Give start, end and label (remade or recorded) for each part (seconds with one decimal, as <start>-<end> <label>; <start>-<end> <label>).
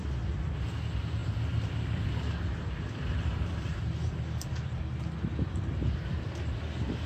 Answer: 0.0-1.2 recorded; 1.2-4.7 remade; 4.7-7.1 recorded